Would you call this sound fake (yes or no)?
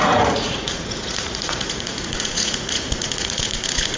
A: yes